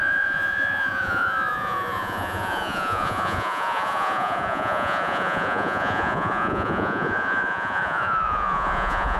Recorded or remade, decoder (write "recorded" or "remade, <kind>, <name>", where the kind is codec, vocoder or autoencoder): remade, vocoder, Vocos